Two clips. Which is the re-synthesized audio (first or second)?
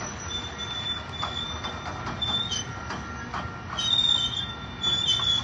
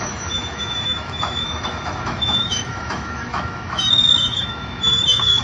second